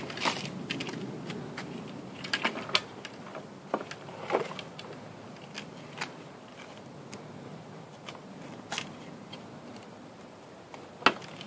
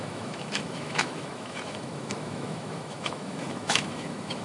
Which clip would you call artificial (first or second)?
second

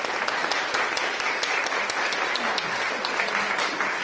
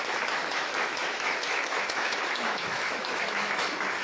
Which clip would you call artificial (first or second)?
second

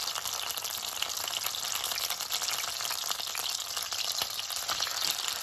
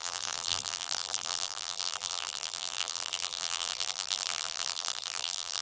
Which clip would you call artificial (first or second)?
second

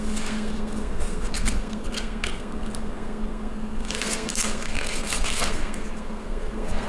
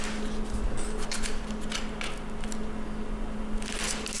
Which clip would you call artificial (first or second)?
first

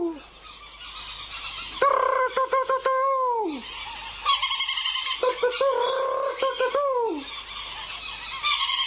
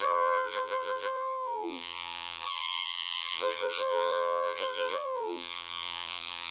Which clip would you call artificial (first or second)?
second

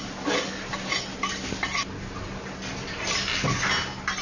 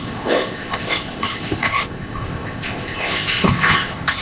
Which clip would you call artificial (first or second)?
second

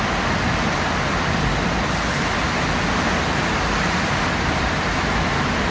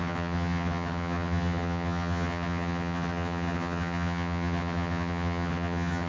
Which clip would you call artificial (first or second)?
second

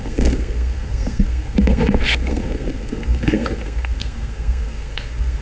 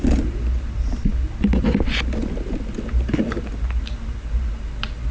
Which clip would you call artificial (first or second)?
first